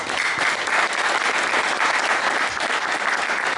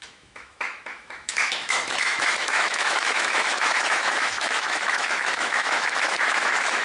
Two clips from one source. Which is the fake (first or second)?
second